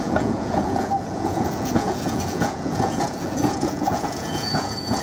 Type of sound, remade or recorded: remade